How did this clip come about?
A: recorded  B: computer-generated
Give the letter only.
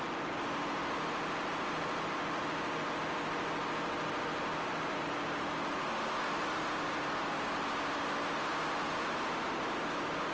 A